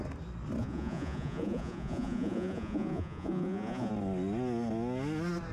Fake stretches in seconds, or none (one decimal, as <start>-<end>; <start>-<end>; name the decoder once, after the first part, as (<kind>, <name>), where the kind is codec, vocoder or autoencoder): 0.6-3.9 (vocoder, Vocos)